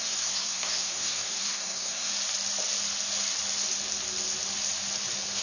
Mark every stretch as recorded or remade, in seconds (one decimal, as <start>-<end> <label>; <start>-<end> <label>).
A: 0.0-2.1 remade; 2.1-5.4 recorded